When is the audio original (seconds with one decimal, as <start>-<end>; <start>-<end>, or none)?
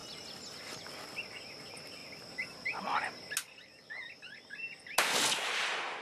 0.0-6.0